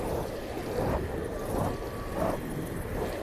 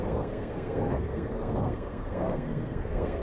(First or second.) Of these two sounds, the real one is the first